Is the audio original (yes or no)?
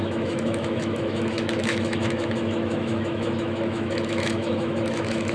no